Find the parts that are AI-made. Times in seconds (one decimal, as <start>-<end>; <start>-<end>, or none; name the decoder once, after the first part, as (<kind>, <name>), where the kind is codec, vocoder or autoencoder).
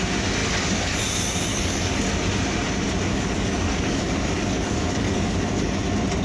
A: 0.4-1.0 (codec, DAC); 1.5-2.0; 3.1-5.8